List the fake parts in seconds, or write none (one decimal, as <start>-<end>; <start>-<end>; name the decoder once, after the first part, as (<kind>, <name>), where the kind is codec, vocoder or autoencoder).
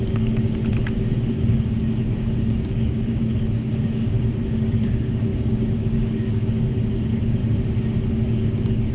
0.0-0.6 (codec, DAC); 1.3-3.7; 4.6-7.4; 8.1-8.9